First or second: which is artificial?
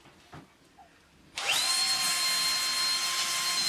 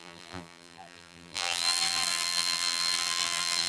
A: second